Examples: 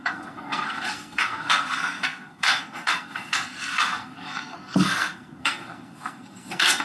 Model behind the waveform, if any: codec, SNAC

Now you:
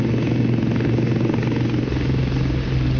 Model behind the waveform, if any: none